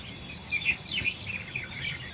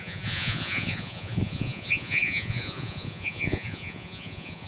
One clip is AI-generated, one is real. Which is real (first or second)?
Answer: first